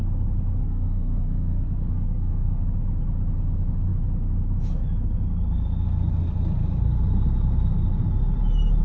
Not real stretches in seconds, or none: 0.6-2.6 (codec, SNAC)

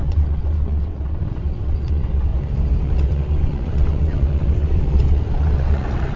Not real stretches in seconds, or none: 0.0-2.3 (vocoder, WaveNeXt); 2.8-6.2

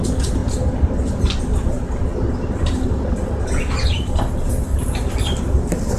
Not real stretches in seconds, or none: 0.0-0.4 (vocoder, BigVGAN v2); 1.4-4.7; 5.4-6.0

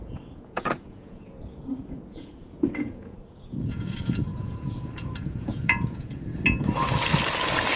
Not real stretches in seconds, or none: 0.0-6.3 (vocoder, Vocos)

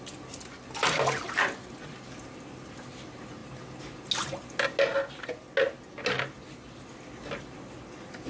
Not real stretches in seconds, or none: none

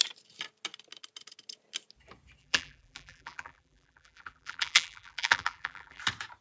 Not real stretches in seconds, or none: 2.4-6.0 (vocoder, BigVGAN v2)

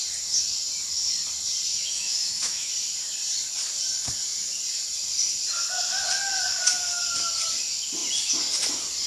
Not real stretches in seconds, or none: 1.7-2.7 (autoencoder, DAC-VAE)